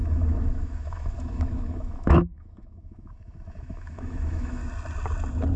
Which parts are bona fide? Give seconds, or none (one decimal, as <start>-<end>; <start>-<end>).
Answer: 4.6-5.6

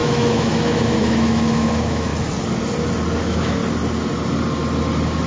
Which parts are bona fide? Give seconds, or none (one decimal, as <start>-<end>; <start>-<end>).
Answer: 2.1-3.2; 3.6-5.3